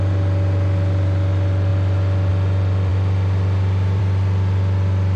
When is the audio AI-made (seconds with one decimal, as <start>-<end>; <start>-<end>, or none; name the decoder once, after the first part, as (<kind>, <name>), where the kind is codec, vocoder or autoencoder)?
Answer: none